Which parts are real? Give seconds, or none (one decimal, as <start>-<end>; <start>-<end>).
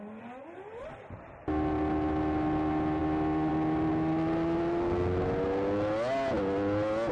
0.0-7.1